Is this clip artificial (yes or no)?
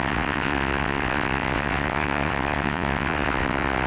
yes